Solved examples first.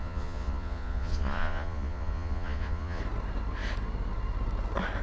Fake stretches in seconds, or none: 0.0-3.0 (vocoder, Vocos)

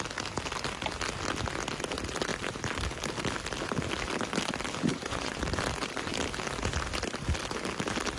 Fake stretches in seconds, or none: 4.9-5.4 (vocoder, Vocos)